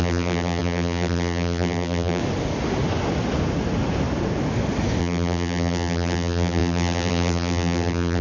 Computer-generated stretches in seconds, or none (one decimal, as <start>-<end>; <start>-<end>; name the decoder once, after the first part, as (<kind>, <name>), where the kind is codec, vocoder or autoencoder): 0.0-2.2 (vocoder, BigVGAN v2); 5.0-8.2